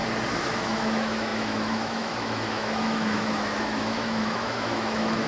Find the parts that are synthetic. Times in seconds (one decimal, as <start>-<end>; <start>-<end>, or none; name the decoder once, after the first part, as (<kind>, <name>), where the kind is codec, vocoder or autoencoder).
0.5-5.3 (autoencoder, DAC-VAE)